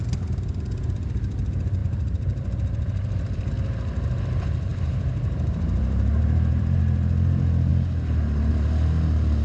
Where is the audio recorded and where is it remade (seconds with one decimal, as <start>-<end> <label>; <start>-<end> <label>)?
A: 0.0-1.8 recorded; 1.8-3.5 remade; 3.5-4.7 recorded; 4.7-6.8 remade; 6.8-9.4 recorded